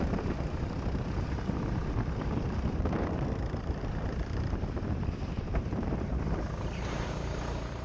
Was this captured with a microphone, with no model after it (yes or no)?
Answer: no